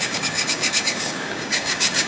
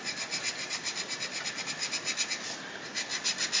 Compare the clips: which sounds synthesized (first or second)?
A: first